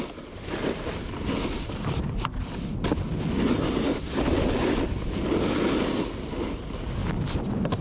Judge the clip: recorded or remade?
recorded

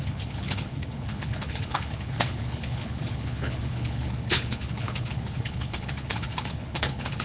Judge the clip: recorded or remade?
remade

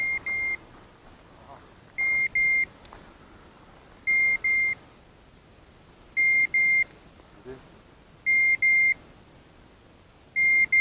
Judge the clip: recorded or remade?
recorded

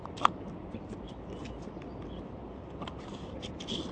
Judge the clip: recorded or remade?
recorded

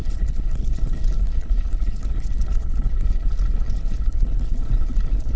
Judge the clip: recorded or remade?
remade